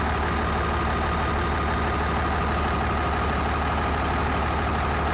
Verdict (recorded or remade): recorded